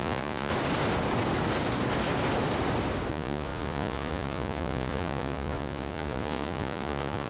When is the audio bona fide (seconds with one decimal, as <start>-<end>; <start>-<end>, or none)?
0.5-3.1